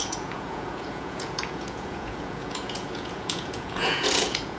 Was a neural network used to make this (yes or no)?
yes